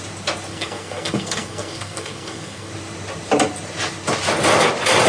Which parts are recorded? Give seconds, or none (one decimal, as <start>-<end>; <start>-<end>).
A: 0.0-0.5; 2.7-5.1